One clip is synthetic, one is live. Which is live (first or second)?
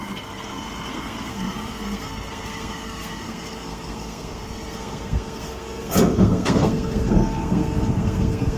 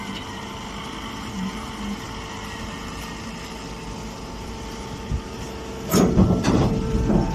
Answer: second